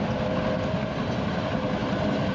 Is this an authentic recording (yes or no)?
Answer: yes